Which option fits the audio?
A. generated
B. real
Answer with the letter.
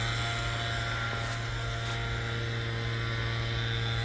B